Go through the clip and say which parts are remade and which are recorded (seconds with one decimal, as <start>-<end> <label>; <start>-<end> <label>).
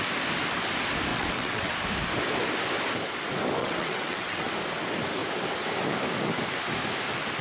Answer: 0.0-1.1 recorded; 1.1-1.7 remade; 1.7-3.6 recorded; 3.6-4.5 remade; 4.5-7.4 recorded